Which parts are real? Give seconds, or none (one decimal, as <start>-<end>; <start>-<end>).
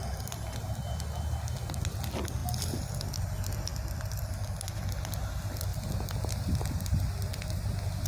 2.4-3.2; 5.7-6.3